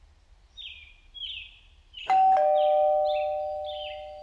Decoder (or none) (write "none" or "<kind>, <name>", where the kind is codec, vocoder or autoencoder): none